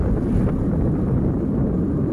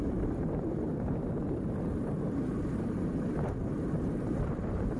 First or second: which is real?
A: first